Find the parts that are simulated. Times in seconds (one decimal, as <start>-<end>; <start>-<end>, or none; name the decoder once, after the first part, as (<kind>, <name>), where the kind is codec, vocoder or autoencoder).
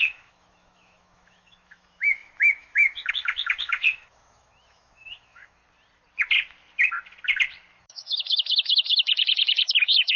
0.0-5.6 (autoencoder, DAC-VAE); 7.8-10.2